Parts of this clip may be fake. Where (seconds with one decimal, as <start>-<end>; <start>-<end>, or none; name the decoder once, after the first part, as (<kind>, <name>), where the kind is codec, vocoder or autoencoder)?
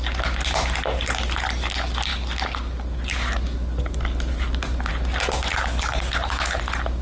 5.5-6.6 (codec, HILCodec)